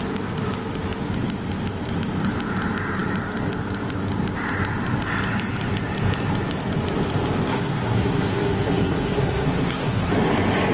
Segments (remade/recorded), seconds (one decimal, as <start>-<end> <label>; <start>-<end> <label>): 0.0-7.5 recorded; 7.5-10.1 remade; 10.1-10.7 recorded